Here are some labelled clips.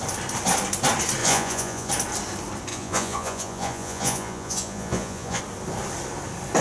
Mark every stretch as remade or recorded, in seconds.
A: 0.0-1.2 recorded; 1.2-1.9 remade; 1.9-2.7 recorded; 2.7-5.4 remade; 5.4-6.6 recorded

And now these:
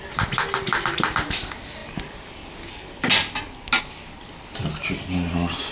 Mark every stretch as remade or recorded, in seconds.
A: 0.0-5.7 recorded